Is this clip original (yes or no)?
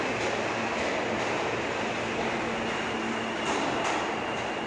yes